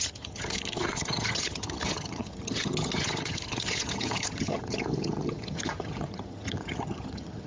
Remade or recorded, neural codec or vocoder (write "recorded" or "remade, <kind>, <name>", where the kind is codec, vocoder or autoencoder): remade, vocoder, HiFi-GAN